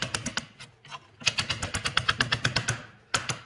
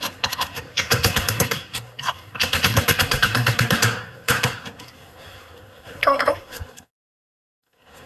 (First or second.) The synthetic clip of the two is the second